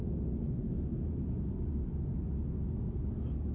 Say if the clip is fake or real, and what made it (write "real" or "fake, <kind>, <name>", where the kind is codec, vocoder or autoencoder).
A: real